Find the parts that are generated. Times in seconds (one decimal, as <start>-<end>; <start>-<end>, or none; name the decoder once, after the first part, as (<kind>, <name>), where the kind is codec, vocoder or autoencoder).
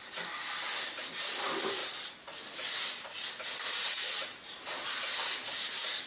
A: 1.8-2.4 (vocoder, BigVGAN v2); 4.3-6.1